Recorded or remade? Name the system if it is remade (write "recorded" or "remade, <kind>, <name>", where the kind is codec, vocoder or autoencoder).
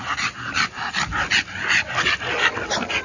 recorded